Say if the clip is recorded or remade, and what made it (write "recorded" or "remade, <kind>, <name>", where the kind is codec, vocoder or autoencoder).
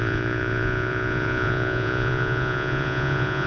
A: remade, vocoder, Vocos